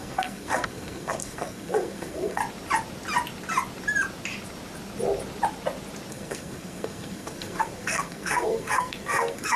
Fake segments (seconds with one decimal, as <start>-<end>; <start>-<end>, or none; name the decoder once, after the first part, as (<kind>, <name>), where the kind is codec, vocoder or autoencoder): 0.0-2.4 (codec, SNAC); 6.1-9.6